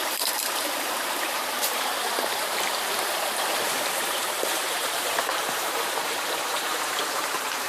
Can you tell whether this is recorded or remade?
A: remade